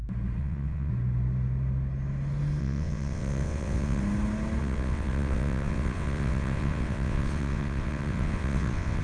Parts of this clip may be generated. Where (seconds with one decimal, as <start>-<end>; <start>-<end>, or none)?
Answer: 0.4-0.9; 2.6-4.0; 4.6-9.0